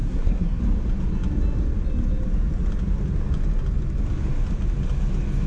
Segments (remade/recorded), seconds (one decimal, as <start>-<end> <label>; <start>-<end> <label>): 0.0-0.6 remade; 0.6-5.5 recorded

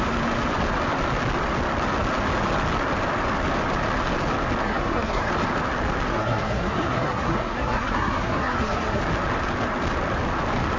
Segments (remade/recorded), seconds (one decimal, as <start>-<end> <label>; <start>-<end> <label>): 0.0-4.6 recorded; 4.6-5.3 remade; 5.3-6.1 recorded; 6.1-9.0 remade; 9.0-10.8 recorded

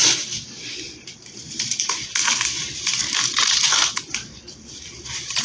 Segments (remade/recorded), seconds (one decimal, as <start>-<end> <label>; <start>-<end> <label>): 0.0-0.8 recorded; 0.8-5.4 remade